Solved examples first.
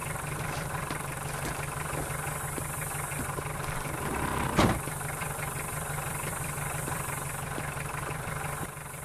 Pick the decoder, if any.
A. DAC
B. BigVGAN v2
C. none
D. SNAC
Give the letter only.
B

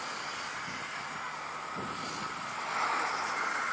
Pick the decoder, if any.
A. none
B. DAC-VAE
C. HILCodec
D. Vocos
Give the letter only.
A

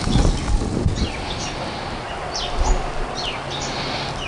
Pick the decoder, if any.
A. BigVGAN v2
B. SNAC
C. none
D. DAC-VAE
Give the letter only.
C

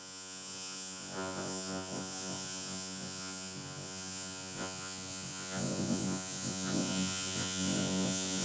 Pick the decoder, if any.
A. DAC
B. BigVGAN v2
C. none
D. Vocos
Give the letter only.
D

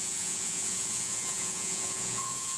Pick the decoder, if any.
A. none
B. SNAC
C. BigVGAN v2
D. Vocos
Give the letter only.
D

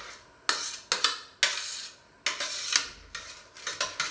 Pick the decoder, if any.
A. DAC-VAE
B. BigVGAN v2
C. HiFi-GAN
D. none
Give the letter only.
D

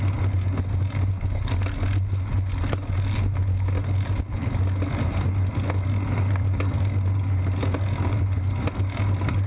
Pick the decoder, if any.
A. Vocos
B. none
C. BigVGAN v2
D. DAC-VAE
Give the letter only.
B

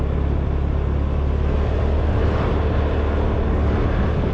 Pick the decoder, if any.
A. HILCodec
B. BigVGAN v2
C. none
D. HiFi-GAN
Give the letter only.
C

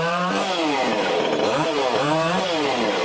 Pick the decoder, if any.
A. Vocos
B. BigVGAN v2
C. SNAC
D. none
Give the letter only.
B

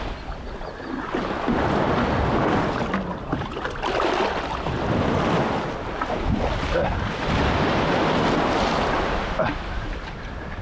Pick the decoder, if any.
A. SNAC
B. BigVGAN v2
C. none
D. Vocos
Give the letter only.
C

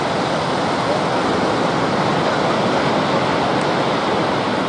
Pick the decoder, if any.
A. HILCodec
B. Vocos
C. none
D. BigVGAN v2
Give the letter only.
C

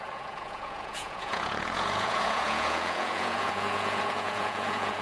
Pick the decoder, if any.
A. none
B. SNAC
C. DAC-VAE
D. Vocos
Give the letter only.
D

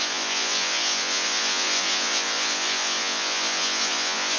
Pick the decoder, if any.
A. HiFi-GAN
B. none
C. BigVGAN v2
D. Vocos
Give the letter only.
D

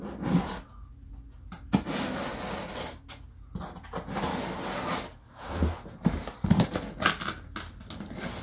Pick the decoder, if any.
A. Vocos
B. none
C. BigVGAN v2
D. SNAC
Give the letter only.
B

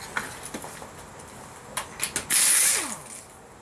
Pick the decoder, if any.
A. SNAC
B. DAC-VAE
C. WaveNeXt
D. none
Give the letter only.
D